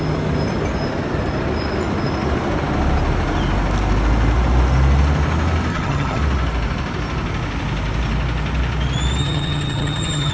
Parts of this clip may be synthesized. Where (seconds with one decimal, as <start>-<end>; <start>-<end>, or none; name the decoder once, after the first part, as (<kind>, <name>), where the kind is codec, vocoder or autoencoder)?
5.7-6.2 (vocoder, HiFi-GAN); 9.2-10.3